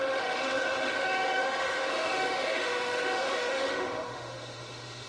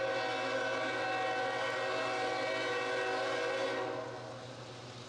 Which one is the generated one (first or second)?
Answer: first